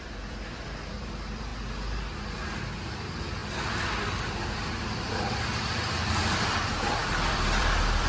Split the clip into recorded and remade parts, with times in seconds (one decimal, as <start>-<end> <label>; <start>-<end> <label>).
0.0-1.5 remade; 1.5-2.8 recorded; 2.8-3.4 remade; 3.4-5.9 recorded; 5.9-8.1 remade